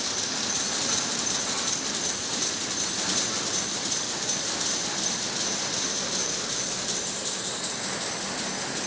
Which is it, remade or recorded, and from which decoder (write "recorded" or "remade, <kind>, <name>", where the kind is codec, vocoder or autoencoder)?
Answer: recorded